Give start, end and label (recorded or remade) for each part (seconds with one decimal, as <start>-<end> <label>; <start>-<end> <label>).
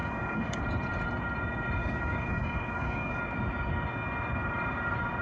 0.0-0.6 remade; 0.6-1.8 recorded; 1.8-3.2 remade; 3.2-5.2 recorded